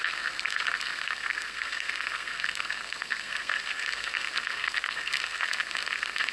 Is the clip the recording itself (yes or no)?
no